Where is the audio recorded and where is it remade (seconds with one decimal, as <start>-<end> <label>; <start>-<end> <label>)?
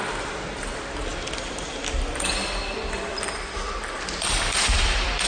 0.0-5.3 recorded